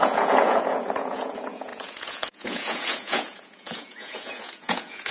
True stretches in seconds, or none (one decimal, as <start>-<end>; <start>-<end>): none

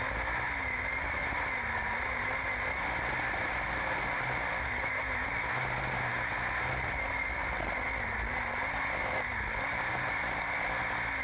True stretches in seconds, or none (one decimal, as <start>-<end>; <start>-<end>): 0.0-11.2

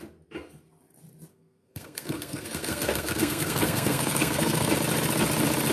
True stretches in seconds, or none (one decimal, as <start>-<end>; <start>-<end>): 0.0-1.3; 4.7-5.7

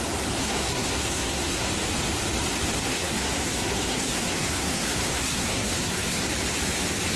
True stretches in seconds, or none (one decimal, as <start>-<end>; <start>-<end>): 0.0-0.4; 1.7-2.8; 6.3-7.2